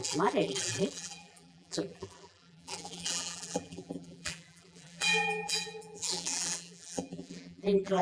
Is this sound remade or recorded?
remade